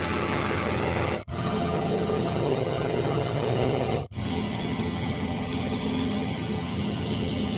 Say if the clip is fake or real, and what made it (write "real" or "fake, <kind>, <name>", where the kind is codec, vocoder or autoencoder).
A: fake, vocoder, HiFi-GAN